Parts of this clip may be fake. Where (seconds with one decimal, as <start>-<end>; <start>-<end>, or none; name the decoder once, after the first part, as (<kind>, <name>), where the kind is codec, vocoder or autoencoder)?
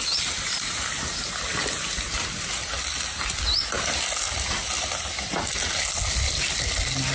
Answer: none